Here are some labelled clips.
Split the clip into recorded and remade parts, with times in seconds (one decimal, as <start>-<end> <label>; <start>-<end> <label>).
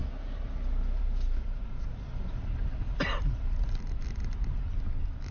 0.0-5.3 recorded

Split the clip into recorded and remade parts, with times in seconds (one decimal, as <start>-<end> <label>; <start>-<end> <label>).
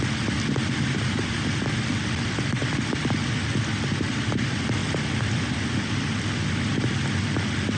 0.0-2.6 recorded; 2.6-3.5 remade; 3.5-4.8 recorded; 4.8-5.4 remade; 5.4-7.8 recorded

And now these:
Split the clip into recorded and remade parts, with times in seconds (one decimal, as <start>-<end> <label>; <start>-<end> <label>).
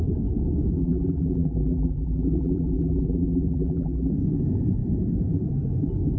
0.0-0.8 recorded; 0.8-4.1 remade; 4.1-6.2 recorded